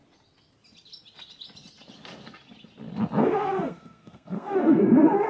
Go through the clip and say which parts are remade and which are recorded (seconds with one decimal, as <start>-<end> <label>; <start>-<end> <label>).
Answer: 0.0-3.2 recorded; 3.2-5.3 remade

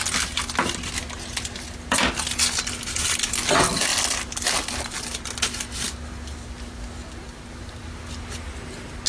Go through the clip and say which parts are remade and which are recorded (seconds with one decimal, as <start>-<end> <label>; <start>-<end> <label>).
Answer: 0.0-9.1 recorded